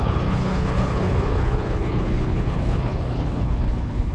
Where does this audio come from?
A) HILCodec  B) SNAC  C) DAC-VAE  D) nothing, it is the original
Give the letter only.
A